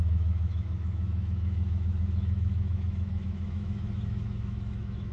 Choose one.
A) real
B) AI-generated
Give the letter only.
B